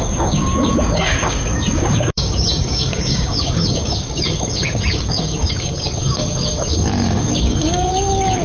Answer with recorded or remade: remade